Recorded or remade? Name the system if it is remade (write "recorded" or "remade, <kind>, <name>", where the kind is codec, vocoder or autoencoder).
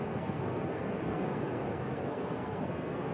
remade, codec, SNAC